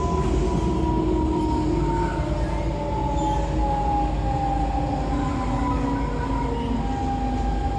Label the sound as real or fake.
real